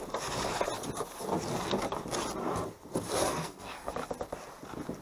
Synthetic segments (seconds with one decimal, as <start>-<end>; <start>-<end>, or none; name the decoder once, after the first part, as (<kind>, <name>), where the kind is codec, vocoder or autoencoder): 3.2-3.9 (codec, SNAC)